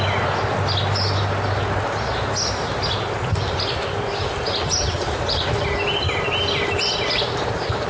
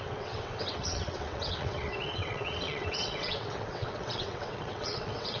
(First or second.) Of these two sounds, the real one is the first